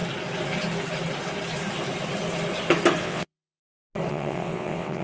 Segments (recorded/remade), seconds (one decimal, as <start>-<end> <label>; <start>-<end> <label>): 0.0-3.0 recorded; 3.0-3.6 remade; 3.6-4.1 recorded; 4.1-5.0 remade